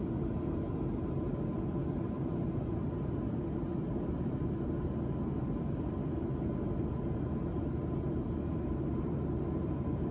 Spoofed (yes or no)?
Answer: no